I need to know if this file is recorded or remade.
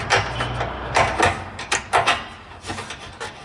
recorded